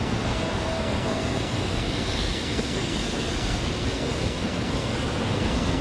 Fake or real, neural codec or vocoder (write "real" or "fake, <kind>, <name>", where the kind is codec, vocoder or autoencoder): fake, codec, SNAC